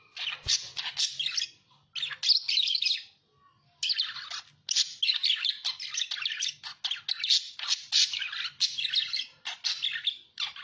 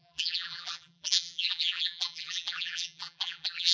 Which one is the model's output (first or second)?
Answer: second